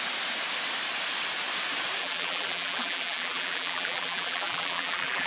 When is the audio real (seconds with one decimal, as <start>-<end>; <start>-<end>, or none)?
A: 0.0-2.0